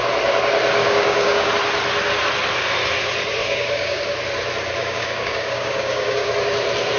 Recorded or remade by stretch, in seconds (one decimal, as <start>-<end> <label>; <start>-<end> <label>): 0.0-0.8 recorded; 0.8-1.5 remade; 1.5-3.4 recorded; 3.4-4.0 remade; 4.0-4.8 recorded; 4.8-6.3 remade; 6.3-7.0 recorded